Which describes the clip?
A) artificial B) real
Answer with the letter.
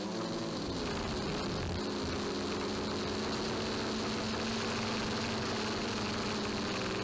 B